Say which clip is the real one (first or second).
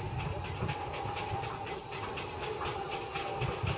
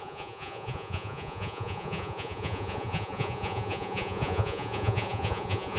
first